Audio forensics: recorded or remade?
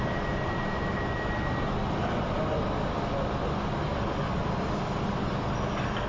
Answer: recorded